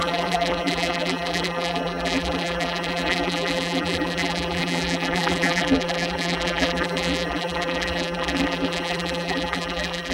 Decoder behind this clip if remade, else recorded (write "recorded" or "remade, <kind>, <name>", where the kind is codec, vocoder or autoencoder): remade, vocoder, BigVGAN v2